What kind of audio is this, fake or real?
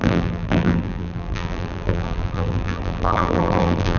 fake